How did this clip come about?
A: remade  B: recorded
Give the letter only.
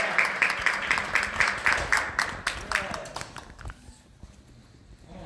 B